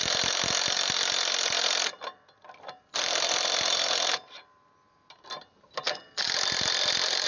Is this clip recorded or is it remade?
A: recorded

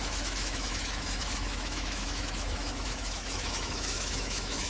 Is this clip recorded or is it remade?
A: remade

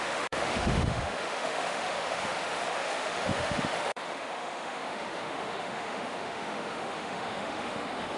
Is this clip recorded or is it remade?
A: remade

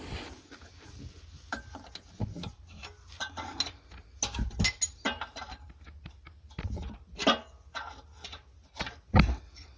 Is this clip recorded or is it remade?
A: recorded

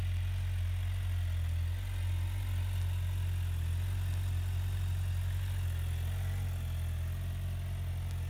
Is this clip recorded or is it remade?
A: recorded